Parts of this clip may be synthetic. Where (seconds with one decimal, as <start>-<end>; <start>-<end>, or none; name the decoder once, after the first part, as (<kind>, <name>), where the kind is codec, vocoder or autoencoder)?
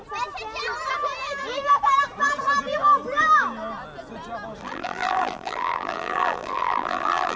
4.6-7.4 (vocoder, BigVGAN v2)